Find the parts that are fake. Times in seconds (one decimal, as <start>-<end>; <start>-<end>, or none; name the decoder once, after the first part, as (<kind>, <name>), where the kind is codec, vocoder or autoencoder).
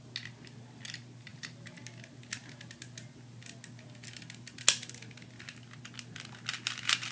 none